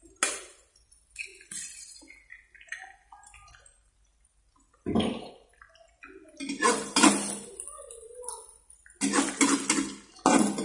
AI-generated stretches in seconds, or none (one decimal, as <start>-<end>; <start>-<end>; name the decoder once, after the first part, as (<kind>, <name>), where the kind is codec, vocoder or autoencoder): none